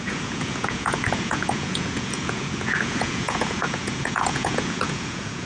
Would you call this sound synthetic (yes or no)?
yes